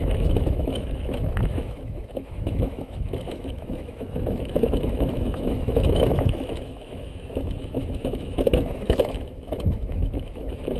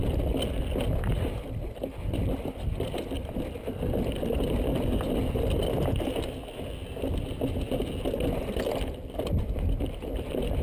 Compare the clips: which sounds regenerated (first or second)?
first